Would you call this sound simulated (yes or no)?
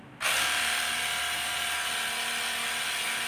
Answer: no